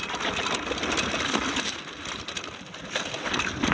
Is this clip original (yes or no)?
yes